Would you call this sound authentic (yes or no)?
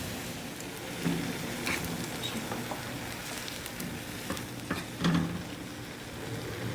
yes